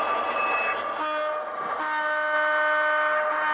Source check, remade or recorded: recorded